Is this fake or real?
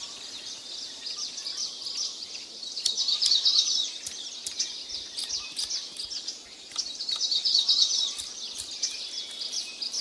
real